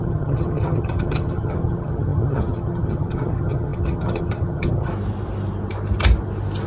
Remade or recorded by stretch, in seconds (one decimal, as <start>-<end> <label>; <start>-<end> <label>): 0.0-4.9 remade; 4.9-6.7 recorded